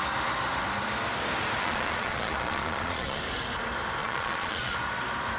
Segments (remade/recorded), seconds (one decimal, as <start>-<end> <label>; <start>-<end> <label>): 0.0-1.6 recorded; 1.6-3.2 remade; 3.2-4.0 recorded; 4.0-4.7 remade; 4.7-5.4 recorded